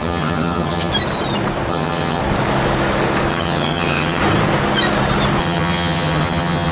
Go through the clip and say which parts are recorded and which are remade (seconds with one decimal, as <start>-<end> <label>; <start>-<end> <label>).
0.0-0.9 remade; 0.9-1.7 recorded; 1.7-2.2 remade; 2.2-3.3 recorded; 3.3-4.2 remade; 4.2-5.4 recorded; 5.4-6.7 remade